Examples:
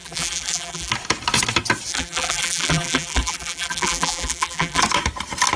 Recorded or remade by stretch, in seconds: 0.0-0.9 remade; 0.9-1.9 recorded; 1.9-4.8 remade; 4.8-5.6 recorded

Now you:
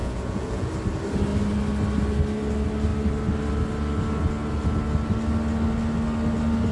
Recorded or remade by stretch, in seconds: 0.0-0.7 remade; 0.7-6.7 recorded

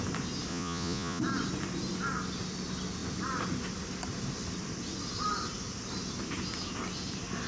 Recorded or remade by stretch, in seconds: 0.0-0.5 recorded; 0.5-1.2 remade; 1.2-7.5 recorded

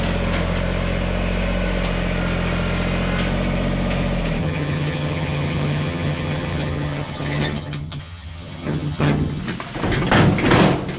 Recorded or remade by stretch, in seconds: 0.0-4.4 recorded; 4.4-9.4 remade; 9.4-11.0 recorded

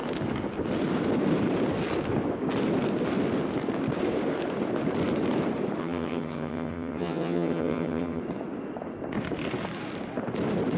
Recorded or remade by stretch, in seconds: 0.0-5.8 recorded; 5.8-8.2 remade; 8.2-10.8 recorded

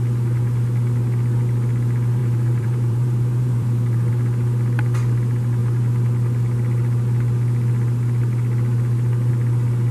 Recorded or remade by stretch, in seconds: 0.0-2.2 recorded; 2.2-4.1 remade; 4.1-9.9 recorded

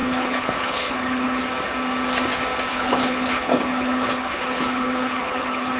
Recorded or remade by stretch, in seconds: 0.0-1.4 remade; 1.4-2.7 recorded; 2.7-5.8 remade

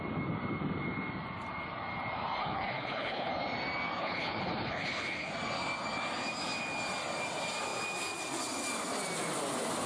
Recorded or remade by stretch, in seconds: 0.0-2.4 recorded; 2.4-3.3 remade; 3.3-4.0 recorded; 4.0-5.3 remade; 5.3-9.9 recorded